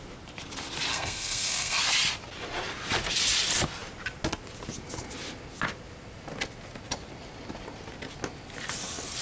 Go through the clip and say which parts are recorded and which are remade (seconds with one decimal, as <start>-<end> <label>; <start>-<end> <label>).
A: 0.0-0.9 recorded; 0.9-1.8 remade; 1.8-9.2 recorded